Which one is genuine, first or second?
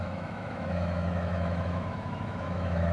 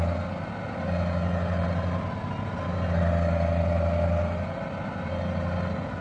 second